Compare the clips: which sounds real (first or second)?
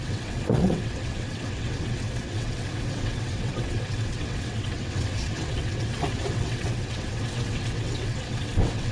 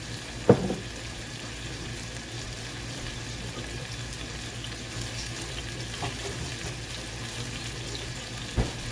second